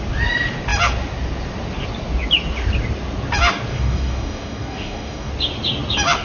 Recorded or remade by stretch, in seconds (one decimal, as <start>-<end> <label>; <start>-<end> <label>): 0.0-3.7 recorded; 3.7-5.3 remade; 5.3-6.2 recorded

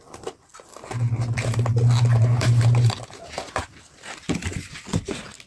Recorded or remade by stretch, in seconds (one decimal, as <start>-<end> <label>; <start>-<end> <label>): 0.0-2.1 recorded; 2.1-3.0 remade; 3.0-5.5 recorded

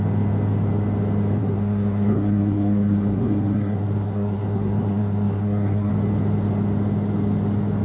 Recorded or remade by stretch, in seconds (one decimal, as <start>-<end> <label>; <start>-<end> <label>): 0.0-1.4 recorded; 1.4-5.9 remade; 5.9-7.8 recorded

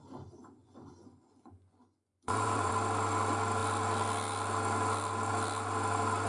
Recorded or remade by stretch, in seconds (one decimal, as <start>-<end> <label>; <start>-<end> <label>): 0.0-0.6 recorded; 0.6-2.7 remade; 2.7-6.3 recorded